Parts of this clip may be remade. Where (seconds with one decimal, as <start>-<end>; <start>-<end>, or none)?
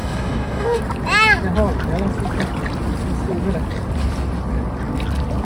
0.0-0.8